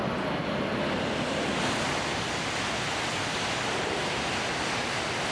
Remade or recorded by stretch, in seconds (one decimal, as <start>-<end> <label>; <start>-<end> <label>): 0.0-5.3 recorded